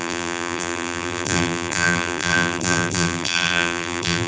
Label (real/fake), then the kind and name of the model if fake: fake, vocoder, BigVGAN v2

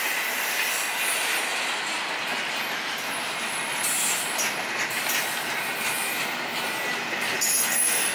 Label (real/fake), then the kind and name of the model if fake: real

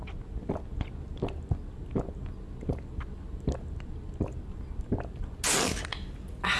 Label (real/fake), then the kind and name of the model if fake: real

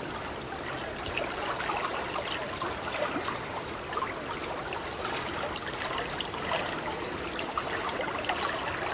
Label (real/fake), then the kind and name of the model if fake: real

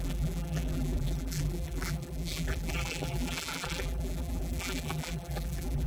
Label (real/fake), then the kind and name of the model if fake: fake, vocoder, BigVGAN v2